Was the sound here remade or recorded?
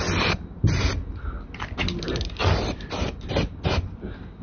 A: recorded